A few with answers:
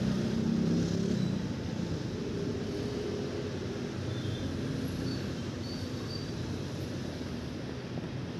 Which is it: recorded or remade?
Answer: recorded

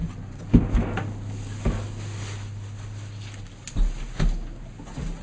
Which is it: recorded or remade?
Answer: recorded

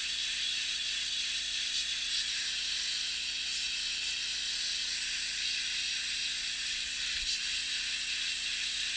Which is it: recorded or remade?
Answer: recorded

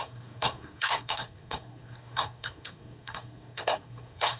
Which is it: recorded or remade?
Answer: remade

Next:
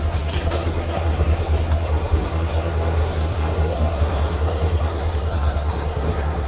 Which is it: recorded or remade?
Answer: remade